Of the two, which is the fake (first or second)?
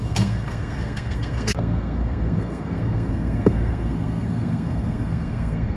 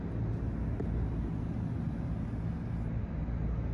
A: first